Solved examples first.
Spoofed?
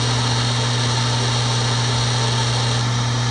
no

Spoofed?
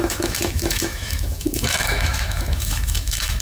yes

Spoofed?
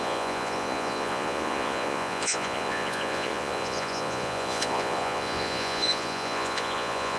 yes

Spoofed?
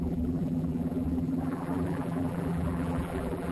yes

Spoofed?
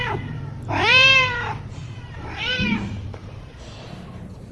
yes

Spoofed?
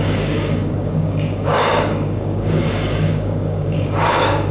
yes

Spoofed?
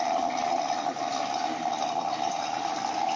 no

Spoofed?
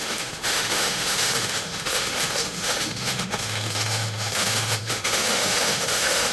yes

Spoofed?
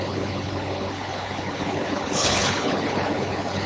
yes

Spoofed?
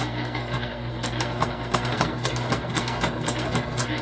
yes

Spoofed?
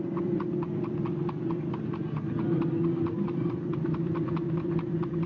no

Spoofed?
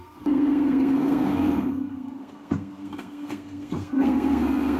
yes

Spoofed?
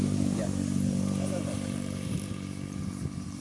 yes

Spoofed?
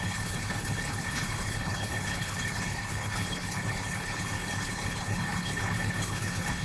yes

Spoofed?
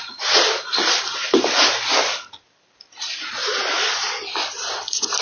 no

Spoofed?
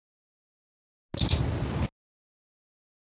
no